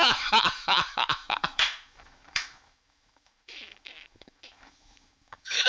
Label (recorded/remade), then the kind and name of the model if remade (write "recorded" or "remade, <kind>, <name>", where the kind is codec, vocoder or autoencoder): remade, autoencoder, DAC-VAE